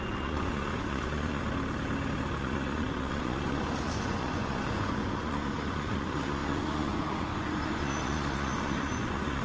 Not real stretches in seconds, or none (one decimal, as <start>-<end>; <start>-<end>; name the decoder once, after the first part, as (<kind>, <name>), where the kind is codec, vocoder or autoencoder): 0.0-1.4 (vocoder, Vocos); 2.4-9.4